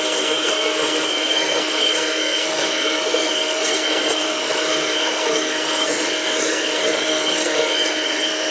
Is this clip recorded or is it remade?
remade